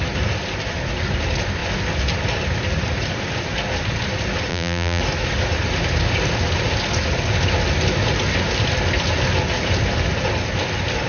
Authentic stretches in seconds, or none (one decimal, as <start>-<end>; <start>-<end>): 0.0-4.5; 5.0-11.1